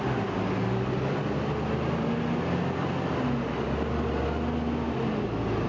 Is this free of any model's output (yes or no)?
yes